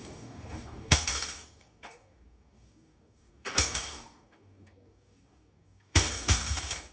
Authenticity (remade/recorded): remade